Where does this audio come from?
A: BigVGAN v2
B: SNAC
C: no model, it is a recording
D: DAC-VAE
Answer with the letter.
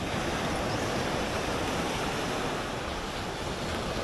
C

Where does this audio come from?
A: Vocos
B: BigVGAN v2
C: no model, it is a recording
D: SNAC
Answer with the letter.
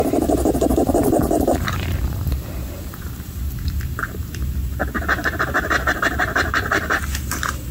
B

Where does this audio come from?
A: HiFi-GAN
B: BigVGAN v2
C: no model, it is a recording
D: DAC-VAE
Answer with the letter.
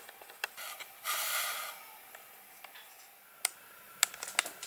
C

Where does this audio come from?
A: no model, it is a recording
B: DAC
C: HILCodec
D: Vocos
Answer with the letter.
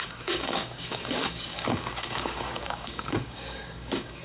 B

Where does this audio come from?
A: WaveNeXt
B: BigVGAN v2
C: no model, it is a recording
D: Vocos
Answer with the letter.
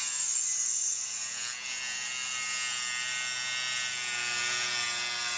C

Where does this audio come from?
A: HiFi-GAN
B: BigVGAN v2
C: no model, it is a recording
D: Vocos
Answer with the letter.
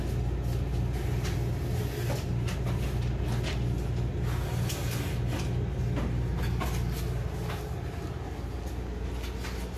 C